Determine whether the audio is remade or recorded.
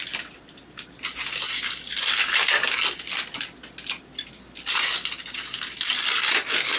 recorded